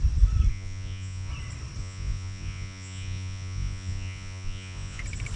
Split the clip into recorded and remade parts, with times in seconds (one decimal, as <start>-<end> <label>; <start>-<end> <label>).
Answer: 0.0-0.5 recorded; 0.5-1.3 remade; 1.3-1.8 recorded; 1.8-5.0 remade; 5.0-5.4 recorded